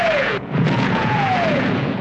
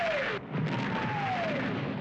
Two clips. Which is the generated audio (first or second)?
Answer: first